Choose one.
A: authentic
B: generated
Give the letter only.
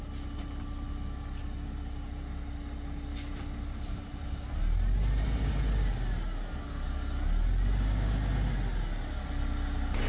A